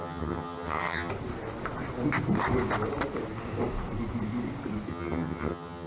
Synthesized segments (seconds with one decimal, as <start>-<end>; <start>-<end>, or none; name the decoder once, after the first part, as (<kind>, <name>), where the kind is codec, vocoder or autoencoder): 0.0-1.1 (vocoder, HiFi-GAN); 4.9-5.9